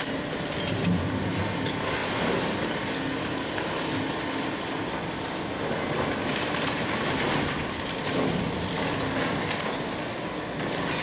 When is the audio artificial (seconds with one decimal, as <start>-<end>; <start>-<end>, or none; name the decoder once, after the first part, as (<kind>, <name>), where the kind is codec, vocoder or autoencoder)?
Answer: none